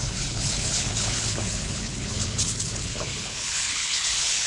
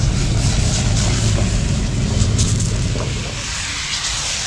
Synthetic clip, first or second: first